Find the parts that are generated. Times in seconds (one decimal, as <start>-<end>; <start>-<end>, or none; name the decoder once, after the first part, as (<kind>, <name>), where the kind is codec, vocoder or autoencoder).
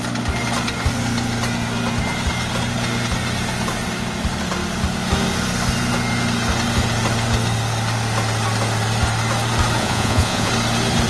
9.8-10.5 (vocoder, Vocos)